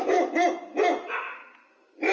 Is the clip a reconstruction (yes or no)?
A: no